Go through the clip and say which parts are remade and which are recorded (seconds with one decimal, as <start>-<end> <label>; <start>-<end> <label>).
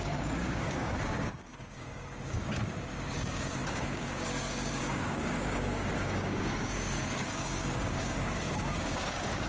0.0-9.5 remade